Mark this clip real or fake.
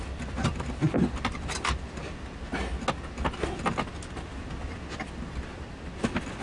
real